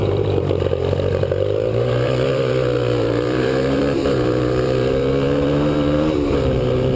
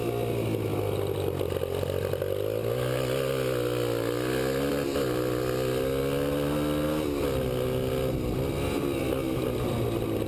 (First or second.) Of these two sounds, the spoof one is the first